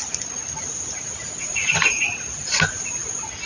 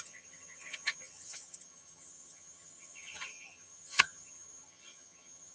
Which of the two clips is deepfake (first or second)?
second